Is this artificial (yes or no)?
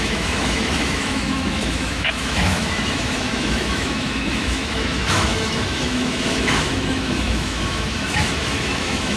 yes